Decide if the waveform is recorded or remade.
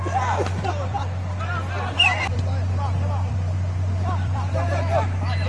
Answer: remade